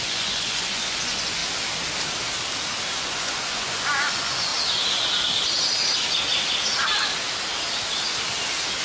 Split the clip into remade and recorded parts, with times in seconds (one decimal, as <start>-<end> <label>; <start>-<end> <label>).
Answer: 0.0-1.4 remade; 1.4-2.9 recorded; 2.9-4.5 remade; 4.5-8.8 recorded